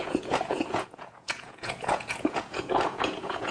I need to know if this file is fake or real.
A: fake